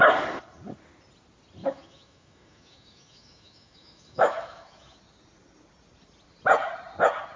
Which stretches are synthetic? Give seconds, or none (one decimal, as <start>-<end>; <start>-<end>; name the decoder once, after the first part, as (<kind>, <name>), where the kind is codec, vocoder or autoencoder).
1.6-5.0 (autoencoder, DAC-VAE)

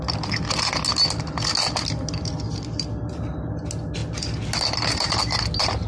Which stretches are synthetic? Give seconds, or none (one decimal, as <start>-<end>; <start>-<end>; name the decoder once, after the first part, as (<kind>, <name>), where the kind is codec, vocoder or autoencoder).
none